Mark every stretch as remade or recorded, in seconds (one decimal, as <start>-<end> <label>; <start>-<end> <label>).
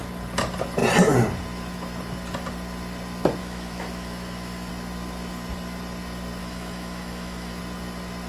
0.0-3.4 recorded; 3.4-4.7 remade; 4.7-6.4 recorded; 6.4-7.6 remade; 7.6-8.3 recorded